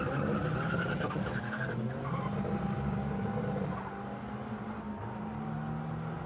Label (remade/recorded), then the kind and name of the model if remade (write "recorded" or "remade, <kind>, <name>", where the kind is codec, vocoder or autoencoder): recorded